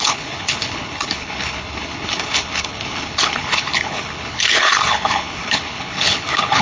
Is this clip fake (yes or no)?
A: yes